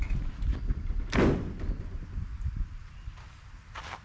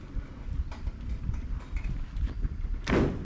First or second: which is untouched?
first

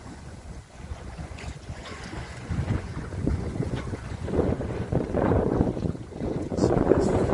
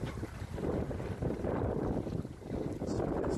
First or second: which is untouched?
second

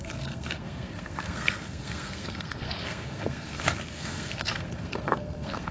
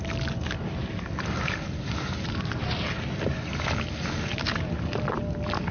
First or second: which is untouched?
second